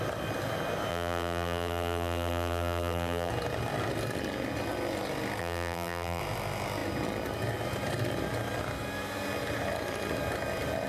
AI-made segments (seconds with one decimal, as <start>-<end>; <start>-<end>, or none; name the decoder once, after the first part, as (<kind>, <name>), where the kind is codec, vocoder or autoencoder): 0.9-3.3 (vocoder, BigVGAN v2); 5.4-6.2